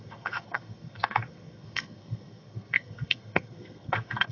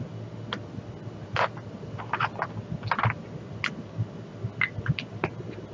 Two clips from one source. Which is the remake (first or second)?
first